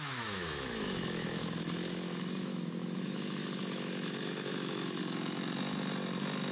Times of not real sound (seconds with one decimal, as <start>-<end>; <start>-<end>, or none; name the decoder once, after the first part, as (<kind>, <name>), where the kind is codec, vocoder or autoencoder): 0.0-5.0 (autoencoder, DAC-VAE)